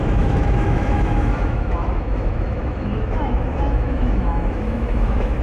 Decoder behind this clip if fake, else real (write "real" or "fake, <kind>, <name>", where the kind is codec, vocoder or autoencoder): fake, autoencoder, DAC-VAE